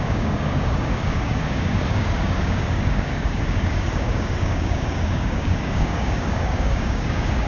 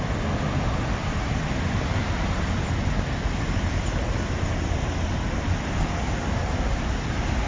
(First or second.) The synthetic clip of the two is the first